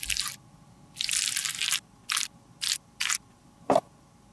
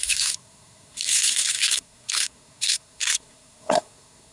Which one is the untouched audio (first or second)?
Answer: first